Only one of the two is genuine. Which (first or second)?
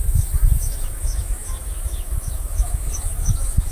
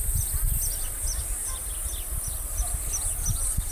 second